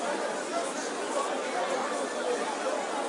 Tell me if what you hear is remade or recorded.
recorded